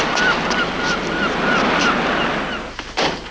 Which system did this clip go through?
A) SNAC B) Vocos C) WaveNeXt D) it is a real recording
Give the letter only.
D